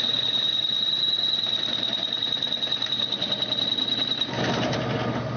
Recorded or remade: recorded